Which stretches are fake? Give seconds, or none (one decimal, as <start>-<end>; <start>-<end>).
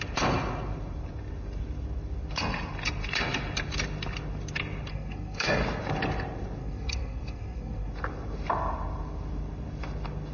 4.9-5.6; 6.6-7.9